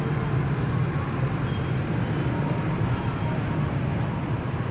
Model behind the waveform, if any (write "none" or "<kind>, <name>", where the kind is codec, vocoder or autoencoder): none